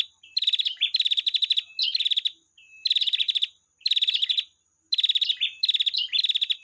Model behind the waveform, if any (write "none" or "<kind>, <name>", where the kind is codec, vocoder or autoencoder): none